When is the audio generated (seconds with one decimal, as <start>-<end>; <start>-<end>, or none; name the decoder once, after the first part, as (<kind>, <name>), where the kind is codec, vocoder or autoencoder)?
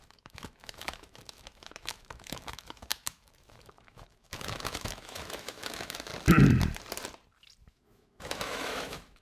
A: 0.0-6.1 (autoencoder, DAC-VAE); 7.7-9.2